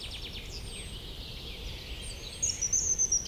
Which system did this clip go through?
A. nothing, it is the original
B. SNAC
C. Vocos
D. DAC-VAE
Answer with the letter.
A